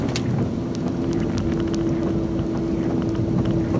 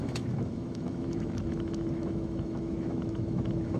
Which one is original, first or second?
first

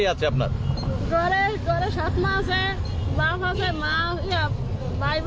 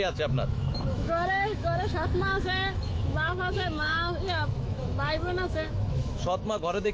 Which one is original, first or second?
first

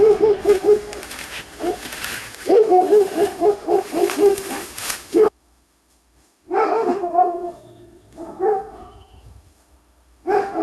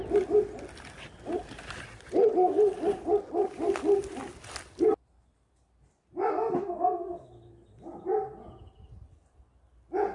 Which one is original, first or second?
second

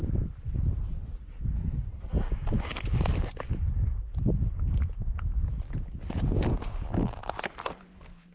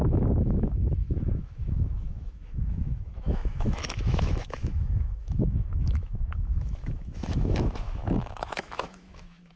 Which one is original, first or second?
first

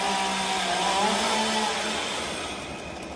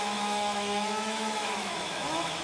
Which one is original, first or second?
first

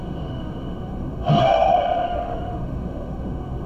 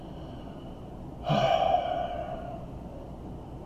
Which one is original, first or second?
second